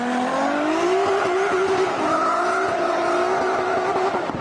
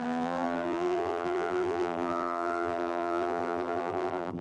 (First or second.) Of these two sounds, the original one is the first